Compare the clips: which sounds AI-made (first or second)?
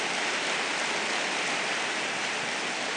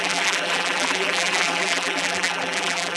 second